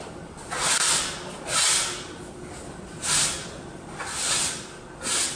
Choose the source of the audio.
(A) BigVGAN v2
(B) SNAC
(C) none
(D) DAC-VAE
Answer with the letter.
C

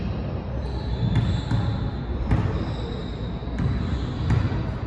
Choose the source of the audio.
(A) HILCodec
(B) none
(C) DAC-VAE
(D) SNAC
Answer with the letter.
B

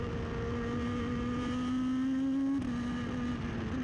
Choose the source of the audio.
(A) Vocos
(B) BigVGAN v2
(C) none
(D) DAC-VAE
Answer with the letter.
C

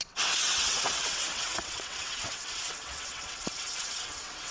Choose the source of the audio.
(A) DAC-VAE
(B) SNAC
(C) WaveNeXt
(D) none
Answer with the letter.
C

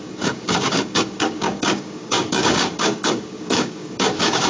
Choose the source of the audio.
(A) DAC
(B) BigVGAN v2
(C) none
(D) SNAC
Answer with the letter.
A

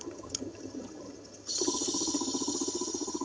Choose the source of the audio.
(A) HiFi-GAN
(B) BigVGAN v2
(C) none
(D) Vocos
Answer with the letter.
A